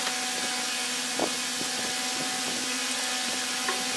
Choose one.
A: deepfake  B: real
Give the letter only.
B